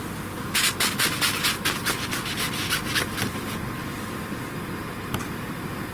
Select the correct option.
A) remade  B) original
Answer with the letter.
B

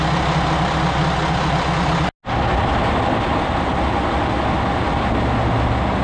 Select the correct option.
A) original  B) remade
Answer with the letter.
A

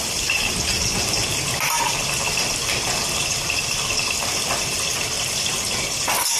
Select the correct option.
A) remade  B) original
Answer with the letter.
B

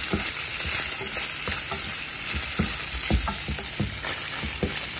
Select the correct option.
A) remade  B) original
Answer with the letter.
B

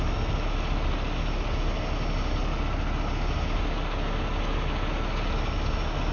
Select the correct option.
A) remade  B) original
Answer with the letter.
B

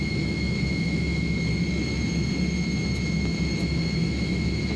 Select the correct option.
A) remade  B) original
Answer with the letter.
A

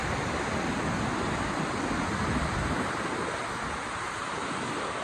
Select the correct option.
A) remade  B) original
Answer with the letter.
B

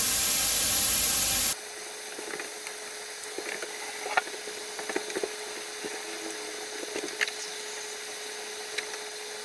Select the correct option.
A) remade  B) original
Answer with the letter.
B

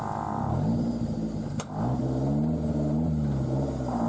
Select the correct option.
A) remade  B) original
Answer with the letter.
B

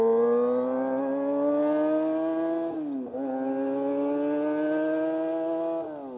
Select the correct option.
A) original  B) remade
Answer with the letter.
A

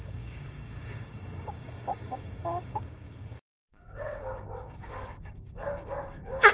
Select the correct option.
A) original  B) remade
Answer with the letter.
B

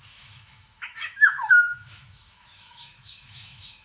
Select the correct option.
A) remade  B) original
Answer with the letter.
A